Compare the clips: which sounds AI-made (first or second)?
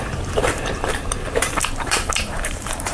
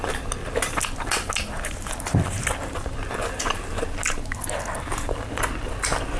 first